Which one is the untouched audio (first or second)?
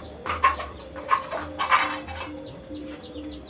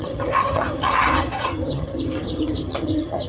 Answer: first